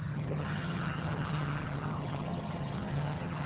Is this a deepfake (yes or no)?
yes